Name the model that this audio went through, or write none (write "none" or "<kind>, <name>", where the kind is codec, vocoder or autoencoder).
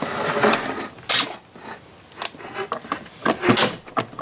none